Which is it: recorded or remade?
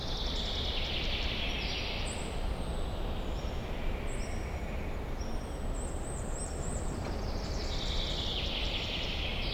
recorded